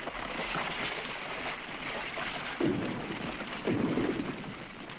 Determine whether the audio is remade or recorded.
recorded